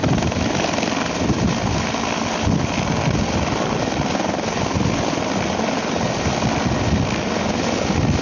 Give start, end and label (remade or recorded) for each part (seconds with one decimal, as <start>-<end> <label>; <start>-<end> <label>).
0.0-8.2 recorded